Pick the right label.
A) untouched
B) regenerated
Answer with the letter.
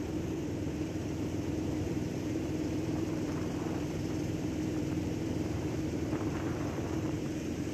B